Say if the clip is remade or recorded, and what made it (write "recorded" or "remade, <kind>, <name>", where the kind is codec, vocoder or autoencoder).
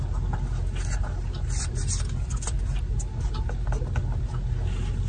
recorded